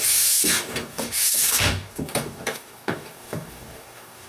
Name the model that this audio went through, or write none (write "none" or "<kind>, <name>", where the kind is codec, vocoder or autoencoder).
codec, DAC